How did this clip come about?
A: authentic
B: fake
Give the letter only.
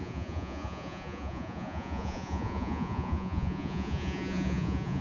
B